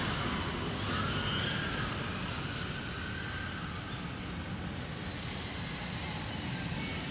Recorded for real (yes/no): yes